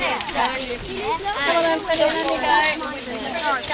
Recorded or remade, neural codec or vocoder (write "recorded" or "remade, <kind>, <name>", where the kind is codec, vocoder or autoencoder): recorded